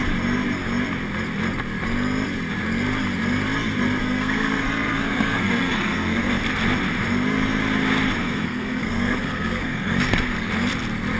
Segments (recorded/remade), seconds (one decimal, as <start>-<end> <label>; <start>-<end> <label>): 0.0-4.0 recorded; 4.0-6.4 remade; 6.4-8.2 recorded; 8.2-10.5 remade; 10.5-11.2 recorded